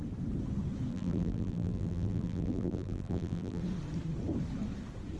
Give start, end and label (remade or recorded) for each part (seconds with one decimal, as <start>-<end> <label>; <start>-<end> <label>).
0.0-0.9 recorded; 0.9-3.6 remade; 3.6-5.2 recorded